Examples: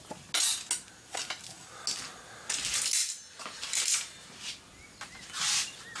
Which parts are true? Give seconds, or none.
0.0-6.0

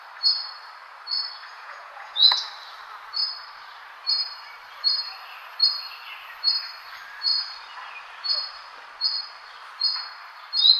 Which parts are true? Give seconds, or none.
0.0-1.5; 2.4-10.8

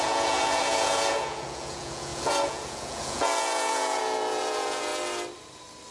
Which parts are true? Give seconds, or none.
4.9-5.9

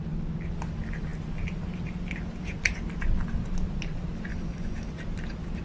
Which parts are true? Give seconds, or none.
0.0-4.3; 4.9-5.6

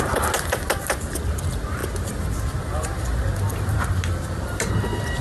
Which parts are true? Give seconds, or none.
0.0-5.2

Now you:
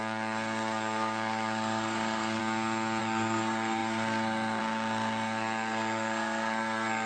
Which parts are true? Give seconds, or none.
2.4-3.0